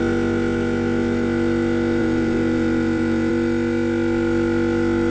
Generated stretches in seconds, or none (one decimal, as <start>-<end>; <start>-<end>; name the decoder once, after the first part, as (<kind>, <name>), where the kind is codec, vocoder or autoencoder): 2.0-3.3 (vocoder, Vocos)